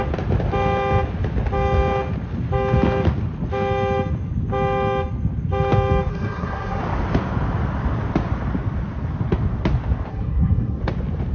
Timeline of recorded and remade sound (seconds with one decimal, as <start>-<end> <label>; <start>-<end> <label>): 0.0-6.1 recorded; 6.1-6.8 remade; 6.8-10.1 recorded; 10.1-10.8 remade; 10.8-11.3 recorded